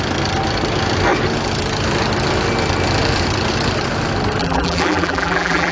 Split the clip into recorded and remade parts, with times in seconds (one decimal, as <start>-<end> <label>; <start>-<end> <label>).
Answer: 0.0-4.4 recorded; 4.4-5.7 remade